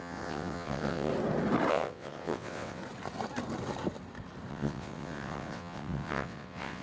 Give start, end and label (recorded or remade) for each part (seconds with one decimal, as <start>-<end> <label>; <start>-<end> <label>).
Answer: 0.0-1.1 remade; 1.1-1.7 recorded; 1.7-2.8 remade; 2.8-4.5 recorded; 4.5-6.8 remade